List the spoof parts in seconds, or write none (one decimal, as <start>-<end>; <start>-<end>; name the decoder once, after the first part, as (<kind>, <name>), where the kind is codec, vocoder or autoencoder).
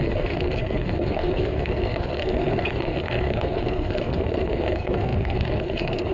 0.0-6.1 (codec, SNAC)